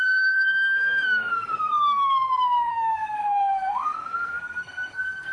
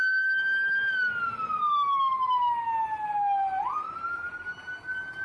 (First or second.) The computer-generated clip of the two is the first